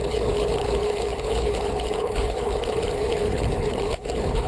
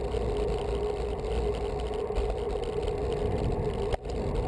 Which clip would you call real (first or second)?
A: second